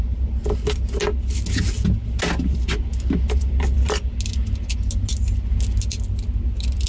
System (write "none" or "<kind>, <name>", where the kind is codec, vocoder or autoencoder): none